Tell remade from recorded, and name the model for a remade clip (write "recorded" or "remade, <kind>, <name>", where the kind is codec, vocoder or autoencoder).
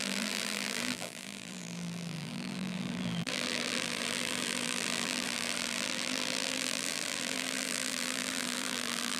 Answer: remade, vocoder, BigVGAN v2